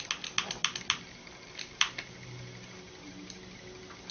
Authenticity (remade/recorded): recorded